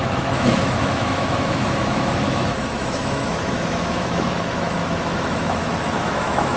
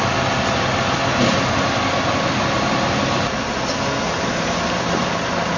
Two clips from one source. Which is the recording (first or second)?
second